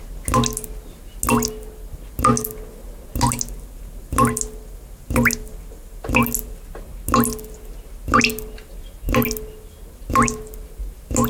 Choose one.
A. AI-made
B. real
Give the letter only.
B